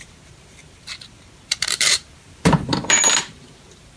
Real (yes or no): no